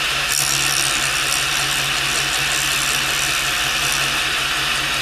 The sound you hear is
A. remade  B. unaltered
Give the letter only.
B